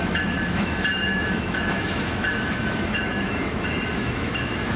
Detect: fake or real fake